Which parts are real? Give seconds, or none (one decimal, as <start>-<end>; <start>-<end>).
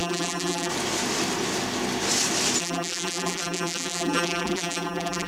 0.7-2.6